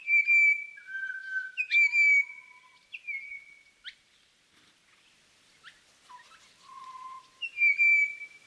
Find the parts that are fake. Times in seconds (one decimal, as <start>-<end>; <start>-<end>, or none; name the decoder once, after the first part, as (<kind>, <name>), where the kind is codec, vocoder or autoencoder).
1.2-2.2 (autoencoder, DAC-VAE)